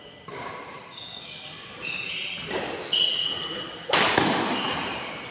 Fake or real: real